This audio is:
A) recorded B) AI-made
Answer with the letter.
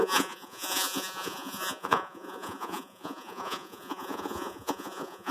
B